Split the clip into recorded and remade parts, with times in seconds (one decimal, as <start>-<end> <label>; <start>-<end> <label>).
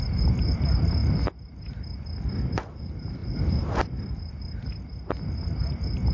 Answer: 0.0-6.1 recorded